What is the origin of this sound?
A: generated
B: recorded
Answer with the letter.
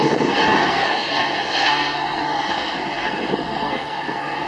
A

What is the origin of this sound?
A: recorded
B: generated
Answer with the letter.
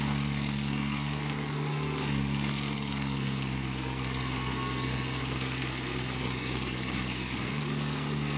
B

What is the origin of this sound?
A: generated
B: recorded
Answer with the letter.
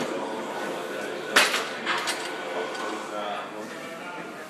B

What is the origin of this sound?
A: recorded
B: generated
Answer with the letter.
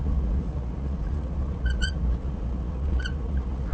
B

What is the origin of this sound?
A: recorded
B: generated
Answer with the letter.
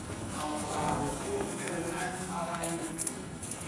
B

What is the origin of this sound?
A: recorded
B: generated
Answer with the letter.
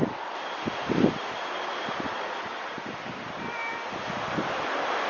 A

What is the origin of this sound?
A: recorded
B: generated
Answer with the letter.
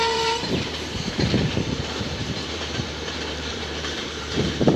B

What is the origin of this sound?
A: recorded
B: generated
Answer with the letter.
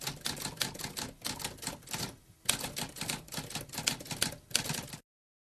A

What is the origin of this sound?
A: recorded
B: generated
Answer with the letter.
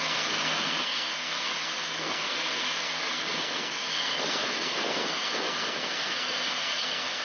B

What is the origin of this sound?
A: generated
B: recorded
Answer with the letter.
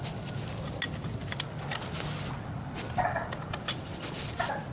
B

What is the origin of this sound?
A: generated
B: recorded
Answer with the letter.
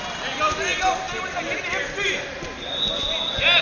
B